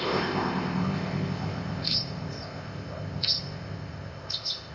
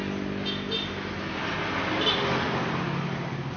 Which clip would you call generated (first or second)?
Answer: first